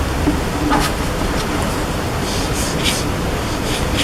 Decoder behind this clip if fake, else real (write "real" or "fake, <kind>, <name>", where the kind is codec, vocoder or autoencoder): real